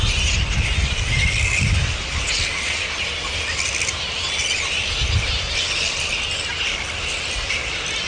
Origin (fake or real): real